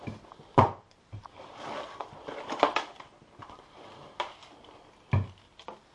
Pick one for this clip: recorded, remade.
recorded